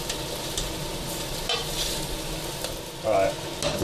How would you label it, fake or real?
real